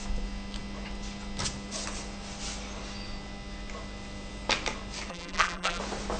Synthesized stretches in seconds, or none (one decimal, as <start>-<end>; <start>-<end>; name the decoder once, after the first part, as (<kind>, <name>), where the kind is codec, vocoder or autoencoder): 5.1-5.8 (vocoder, BigVGAN v2)